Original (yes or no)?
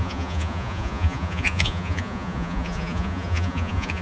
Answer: no